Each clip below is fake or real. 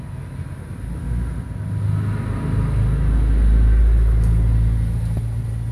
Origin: real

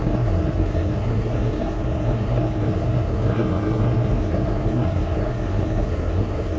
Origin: fake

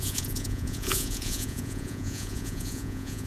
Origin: fake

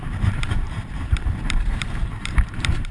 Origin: fake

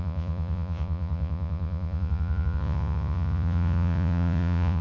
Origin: fake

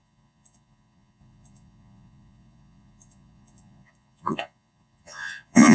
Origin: fake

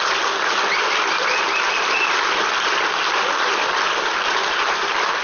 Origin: real